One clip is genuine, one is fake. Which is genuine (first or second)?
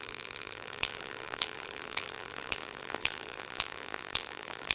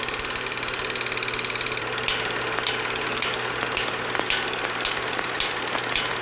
second